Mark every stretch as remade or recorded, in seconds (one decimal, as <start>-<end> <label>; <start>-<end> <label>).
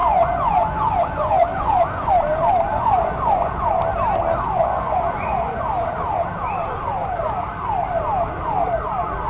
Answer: 0.0-2.1 remade; 2.1-2.7 recorded; 2.7-3.7 remade; 3.7-4.6 recorded; 4.6-5.6 remade; 5.6-9.3 recorded